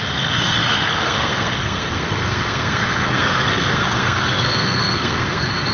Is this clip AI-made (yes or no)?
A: yes